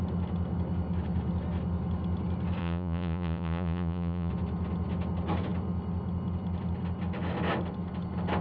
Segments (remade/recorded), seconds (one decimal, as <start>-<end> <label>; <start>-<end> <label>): 0.0-2.6 recorded; 2.6-4.3 remade; 4.3-8.4 recorded